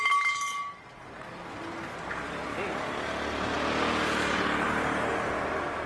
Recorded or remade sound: recorded